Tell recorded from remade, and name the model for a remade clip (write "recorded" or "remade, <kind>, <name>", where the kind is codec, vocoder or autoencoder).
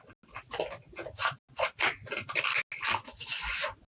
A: recorded